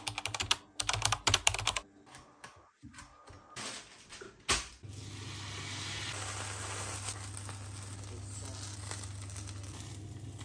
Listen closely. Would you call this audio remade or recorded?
recorded